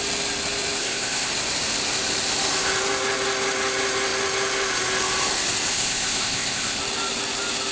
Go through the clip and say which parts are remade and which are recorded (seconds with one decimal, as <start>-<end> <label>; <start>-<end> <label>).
0.0-0.8 recorded; 0.8-1.3 remade; 1.3-5.7 recorded; 5.7-6.8 remade; 6.8-7.7 recorded